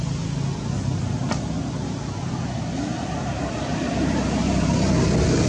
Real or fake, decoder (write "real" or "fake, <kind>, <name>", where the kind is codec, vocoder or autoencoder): real